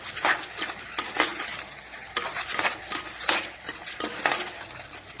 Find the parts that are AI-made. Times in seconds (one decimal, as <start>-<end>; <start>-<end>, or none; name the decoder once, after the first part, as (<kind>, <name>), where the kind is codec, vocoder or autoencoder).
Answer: none